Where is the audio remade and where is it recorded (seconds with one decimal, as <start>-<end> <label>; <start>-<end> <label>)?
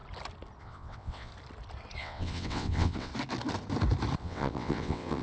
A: 0.0-0.6 recorded; 0.6-1.3 remade; 1.3-2.0 recorded; 2.0-3.1 remade; 3.1-4.2 recorded; 4.2-5.2 remade